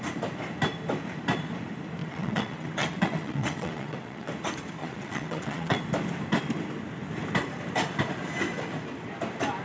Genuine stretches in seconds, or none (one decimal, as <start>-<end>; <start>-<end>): 0.0-2.0; 4.3-4.8; 5.8-9.6